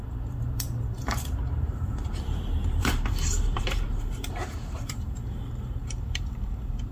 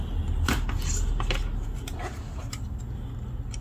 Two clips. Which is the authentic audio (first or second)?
second